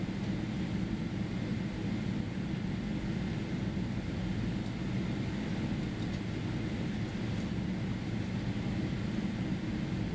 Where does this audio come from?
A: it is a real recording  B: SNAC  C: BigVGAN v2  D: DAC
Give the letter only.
A